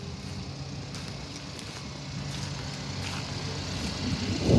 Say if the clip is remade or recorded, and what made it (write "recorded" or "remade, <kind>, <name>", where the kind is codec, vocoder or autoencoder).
recorded